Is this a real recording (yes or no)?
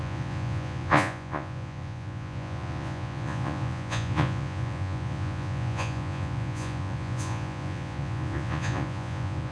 no